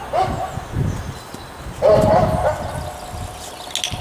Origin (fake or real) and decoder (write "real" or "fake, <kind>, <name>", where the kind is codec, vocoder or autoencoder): real